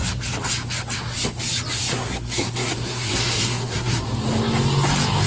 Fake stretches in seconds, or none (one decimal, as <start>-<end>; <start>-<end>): 1.9-4.0